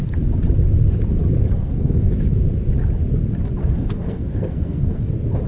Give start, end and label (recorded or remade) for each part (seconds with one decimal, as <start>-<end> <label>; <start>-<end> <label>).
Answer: 0.0-1.5 recorded; 1.5-2.1 remade; 2.1-3.6 recorded; 3.6-5.1 remade; 5.1-5.5 recorded